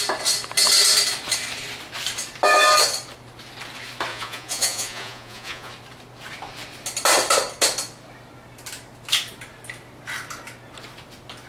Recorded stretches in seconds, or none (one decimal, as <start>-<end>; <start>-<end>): 0.0-4.1; 5.7-11.5